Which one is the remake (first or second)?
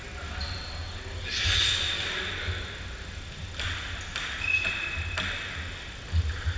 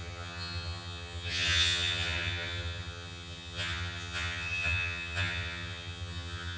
second